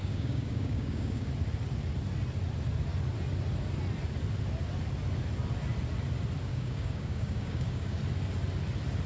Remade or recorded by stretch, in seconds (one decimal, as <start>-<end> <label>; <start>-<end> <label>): 0.0-1.3 remade; 1.3-6.5 recorded; 6.5-8.0 remade; 8.0-9.1 recorded